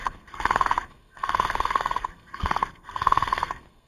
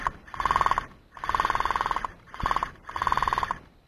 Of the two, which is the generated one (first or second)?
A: first